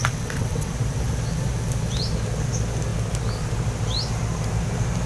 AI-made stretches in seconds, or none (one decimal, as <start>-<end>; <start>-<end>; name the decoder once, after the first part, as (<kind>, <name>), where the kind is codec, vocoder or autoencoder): 0.0-0.7 (vocoder, WaveNeXt)